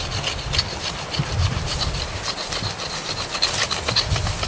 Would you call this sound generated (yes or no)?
no